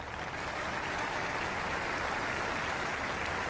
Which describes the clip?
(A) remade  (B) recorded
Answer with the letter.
B